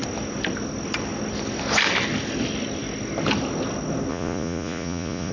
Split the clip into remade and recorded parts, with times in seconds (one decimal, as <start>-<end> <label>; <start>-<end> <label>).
0.0-4.1 recorded; 4.1-5.3 remade